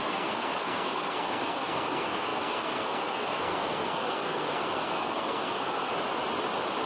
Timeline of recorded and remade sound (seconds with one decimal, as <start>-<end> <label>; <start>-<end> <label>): 0.0-5.9 remade; 5.9-6.9 recorded